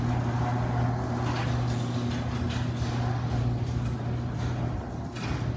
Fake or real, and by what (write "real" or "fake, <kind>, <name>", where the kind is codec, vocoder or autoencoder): real